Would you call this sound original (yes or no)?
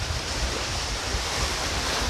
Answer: no